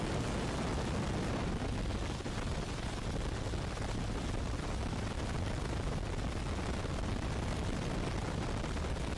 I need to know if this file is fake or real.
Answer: real